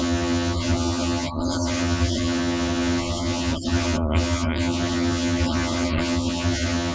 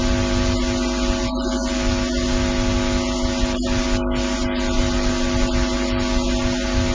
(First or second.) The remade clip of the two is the first